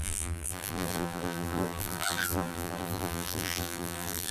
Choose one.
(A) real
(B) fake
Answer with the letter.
B